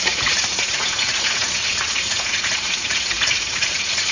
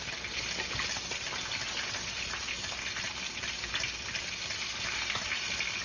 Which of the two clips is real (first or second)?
second